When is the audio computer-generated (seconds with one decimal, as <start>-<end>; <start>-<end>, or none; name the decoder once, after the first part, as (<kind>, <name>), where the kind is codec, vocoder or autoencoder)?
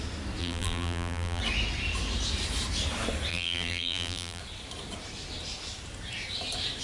0.4-1.4 (vocoder, BigVGAN v2); 3.3-4.4